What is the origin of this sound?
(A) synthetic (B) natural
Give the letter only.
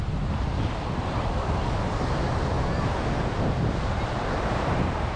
B